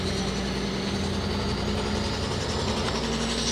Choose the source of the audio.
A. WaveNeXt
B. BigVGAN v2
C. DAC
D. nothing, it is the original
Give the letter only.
D